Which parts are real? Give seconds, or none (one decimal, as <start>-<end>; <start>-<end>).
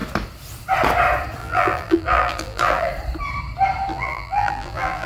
0.0-1.4; 2.9-3.9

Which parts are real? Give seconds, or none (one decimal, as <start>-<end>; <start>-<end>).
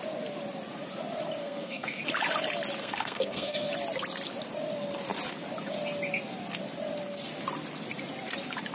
0.0-1.4; 2.0-2.8; 3.7-8.7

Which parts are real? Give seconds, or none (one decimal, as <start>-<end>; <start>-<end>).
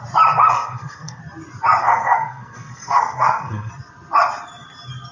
0.0-0.4; 1.2-1.8; 3.7-5.1